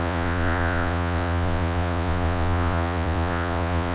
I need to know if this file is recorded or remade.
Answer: remade